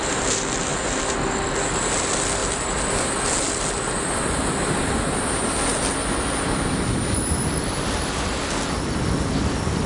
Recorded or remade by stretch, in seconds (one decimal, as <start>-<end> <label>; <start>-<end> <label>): 0.0-9.9 recorded